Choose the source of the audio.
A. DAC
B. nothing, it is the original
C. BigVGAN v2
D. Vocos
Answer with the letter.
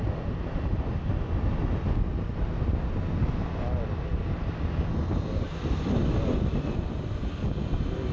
B